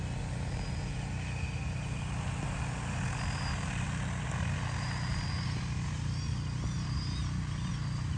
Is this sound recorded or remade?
recorded